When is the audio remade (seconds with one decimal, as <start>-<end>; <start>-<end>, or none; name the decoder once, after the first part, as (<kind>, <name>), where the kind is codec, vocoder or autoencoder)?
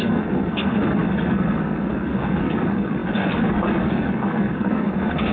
0.0-5.3 (codec, SNAC)